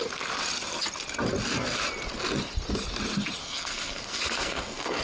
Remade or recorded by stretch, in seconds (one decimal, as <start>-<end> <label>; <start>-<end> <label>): 0.0-3.4 recorded; 3.4-5.0 remade